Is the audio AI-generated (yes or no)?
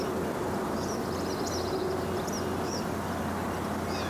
no